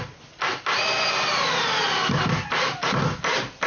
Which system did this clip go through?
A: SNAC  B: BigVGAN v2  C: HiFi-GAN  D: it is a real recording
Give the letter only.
D